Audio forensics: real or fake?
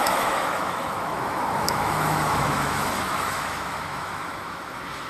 fake